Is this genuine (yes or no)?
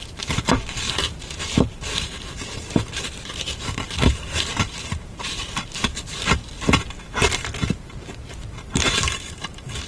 no